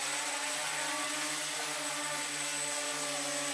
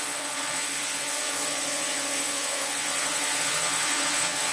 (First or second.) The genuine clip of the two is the first